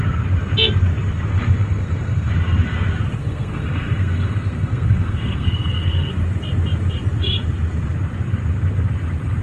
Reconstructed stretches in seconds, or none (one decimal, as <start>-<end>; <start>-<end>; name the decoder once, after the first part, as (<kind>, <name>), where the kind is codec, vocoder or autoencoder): 1.3-2.3 (codec, SNAC); 3.2-6.1